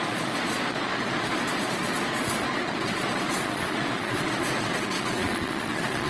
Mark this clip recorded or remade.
remade